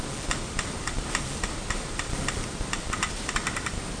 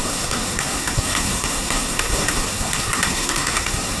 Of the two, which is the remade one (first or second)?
second